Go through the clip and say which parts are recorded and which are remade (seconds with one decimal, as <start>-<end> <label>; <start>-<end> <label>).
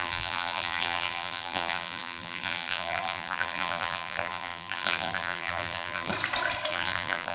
0.0-6.1 remade; 6.1-6.7 recorded; 6.7-7.3 remade